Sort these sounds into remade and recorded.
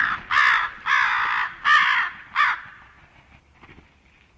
recorded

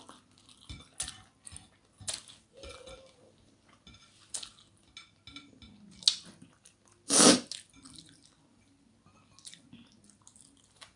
recorded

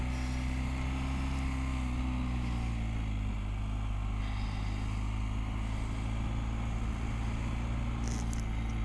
recorded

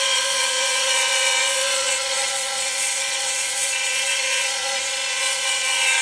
remade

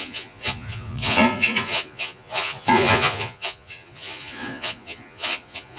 remade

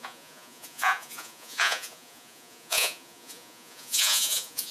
remade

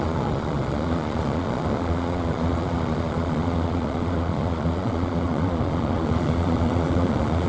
remade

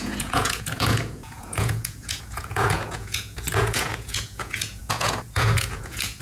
remade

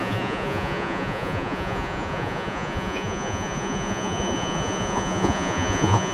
remade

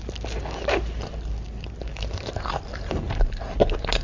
recorded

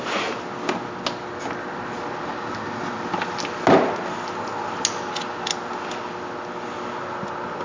recorded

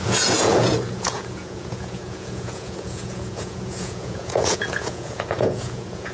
remade